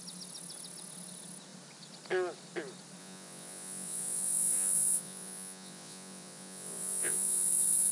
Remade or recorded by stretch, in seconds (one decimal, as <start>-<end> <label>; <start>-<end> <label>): 0.0-3.0 recorded; 3.0-7.9 remade